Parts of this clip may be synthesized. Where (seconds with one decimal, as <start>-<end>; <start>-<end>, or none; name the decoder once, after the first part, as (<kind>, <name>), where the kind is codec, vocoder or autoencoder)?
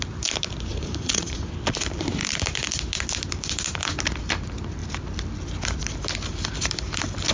0.7-1.5 (vocoder, Vocos)